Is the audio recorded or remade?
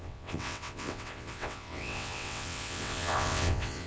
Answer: remade